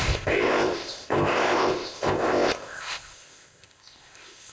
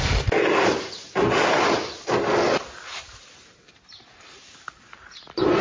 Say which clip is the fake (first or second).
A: first